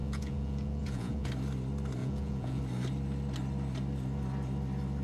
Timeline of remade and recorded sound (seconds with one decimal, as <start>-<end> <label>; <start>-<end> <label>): 0.0-1.3 remade; 1.3-2.0 recorded; 2.0-2.6 remade; 2.6-5.0 recorded